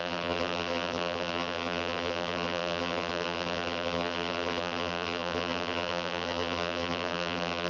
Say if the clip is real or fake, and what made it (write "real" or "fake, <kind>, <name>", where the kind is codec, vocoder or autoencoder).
fake, vocoder, BigVGAN v2